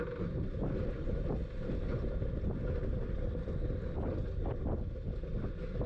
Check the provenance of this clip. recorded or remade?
recorded